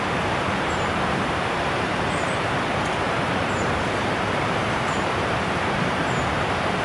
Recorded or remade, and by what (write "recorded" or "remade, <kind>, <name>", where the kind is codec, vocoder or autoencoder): remade, vocoder, BigVGAN v2